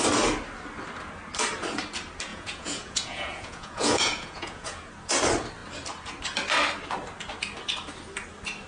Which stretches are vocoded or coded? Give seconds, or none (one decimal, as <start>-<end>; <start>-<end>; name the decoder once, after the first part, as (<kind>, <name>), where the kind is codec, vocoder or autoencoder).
2.3-4.9 (vocoder, Vocos)